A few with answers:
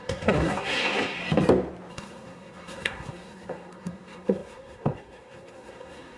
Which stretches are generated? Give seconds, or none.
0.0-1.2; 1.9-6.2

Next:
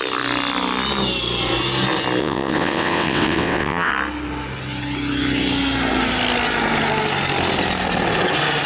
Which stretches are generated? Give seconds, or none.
2.2-3.9